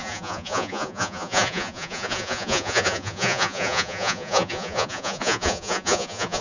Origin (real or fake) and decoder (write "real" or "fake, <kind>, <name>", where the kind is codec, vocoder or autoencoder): fake, vocoder, Vocos